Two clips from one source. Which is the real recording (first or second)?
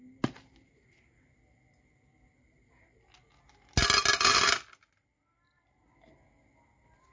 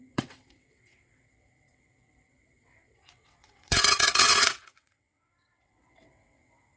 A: first